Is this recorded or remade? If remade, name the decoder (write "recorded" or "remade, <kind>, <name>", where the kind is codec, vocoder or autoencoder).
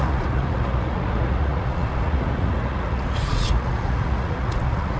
remade, vocoder, Vocos